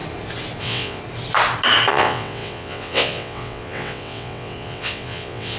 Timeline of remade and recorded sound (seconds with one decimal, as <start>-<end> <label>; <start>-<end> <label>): 0.0-0.6 recorded; 0.6-1.0 remade; 1.0-1.9 recorded; 1.9-5.6 remade